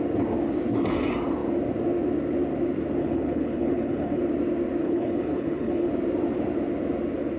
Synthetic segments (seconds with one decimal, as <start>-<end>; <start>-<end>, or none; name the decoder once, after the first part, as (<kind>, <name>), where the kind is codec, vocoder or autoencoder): 3.0-4.2 (codec, HILCodec); 4.8-5.9